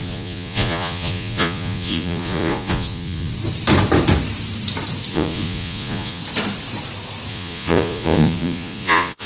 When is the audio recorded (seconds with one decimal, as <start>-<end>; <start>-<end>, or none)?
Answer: 3.3-5.1; 6.2-7.3